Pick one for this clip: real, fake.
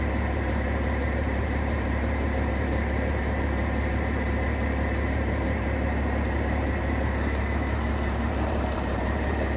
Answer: fake